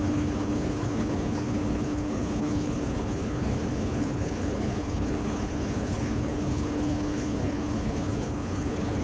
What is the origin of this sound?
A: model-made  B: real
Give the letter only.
A